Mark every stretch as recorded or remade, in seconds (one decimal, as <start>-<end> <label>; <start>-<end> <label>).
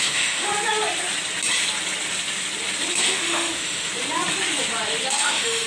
0.0-0.5 remade; 0.5-2.9 recorded; 2.9-3.9 remade; 3.9-5.1 recorded; 5.1-5.7 remade